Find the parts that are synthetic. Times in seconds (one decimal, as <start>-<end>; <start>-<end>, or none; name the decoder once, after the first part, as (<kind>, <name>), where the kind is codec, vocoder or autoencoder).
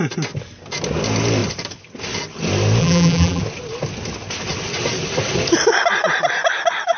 2.8-3.4 (vocoder, BigVGAN v2)